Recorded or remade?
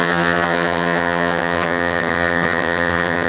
remade